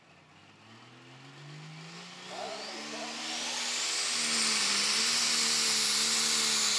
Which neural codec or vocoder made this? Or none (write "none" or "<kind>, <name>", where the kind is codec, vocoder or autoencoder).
none